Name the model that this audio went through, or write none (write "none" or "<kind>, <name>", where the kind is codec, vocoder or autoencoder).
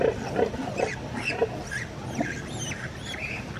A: none